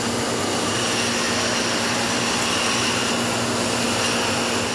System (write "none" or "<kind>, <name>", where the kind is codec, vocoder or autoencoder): none